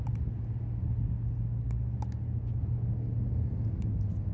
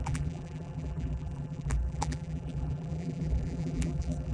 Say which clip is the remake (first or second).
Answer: second